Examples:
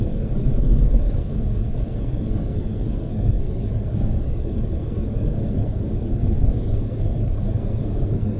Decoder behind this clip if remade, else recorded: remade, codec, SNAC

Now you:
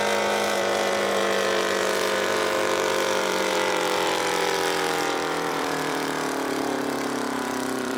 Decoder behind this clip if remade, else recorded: remade, vocoder, BigVGAN v2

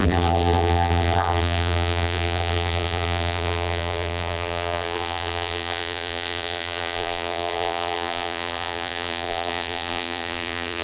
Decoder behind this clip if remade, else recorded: remade, vocoder, BigVGAN v2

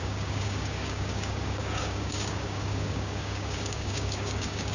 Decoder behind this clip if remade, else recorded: remade, codec, DAC